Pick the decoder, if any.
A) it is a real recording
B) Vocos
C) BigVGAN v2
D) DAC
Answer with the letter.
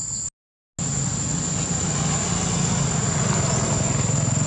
A